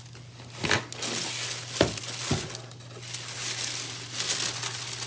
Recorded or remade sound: recorded